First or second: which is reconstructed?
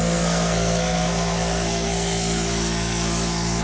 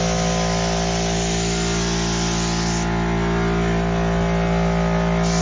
first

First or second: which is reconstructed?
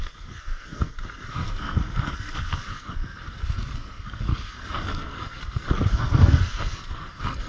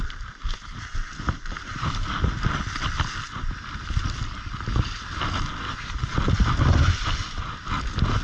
first